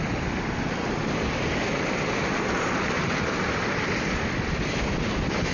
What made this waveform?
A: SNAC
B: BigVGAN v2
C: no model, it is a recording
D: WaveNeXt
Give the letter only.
C